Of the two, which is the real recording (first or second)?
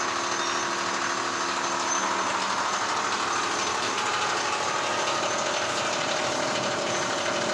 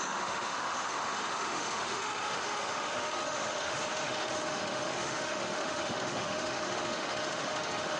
first